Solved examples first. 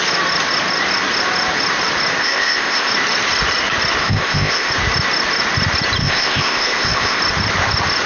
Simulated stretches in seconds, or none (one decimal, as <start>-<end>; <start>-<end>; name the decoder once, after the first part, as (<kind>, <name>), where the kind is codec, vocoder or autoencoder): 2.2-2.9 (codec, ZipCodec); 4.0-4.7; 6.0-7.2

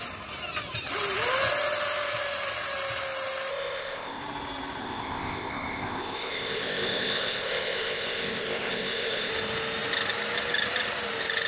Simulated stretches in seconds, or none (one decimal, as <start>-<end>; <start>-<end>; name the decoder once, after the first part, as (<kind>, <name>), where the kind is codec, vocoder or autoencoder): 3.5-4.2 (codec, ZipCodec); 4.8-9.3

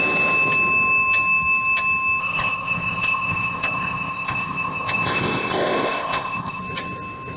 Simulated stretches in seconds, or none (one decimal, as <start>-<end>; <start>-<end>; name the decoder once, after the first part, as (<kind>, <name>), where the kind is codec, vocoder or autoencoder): 2.2-6.6 (codec, ZipCodec)